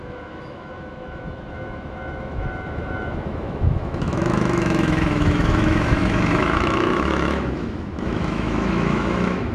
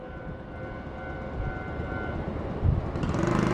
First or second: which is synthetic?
first